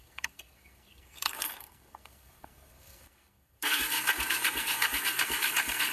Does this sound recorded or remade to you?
remade